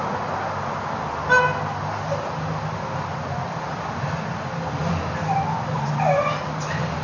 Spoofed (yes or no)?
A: no